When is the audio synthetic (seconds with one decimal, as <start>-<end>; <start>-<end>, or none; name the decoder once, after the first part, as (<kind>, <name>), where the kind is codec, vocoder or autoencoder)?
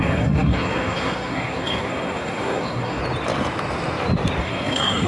0.0-3.0 (codec, SNAC); 4.4-5.1